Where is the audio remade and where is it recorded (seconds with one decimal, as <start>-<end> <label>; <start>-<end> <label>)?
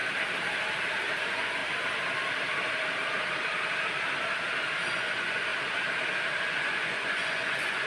0.0-1.2 recorded; 1.2-1.6 remade; 1.6-4.9 recorded; 4.9-5.5 remade; 5.5-6.4 recorded; 6.4-7.9 remade